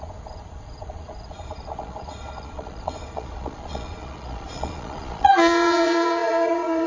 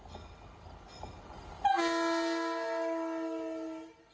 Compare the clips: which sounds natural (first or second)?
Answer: second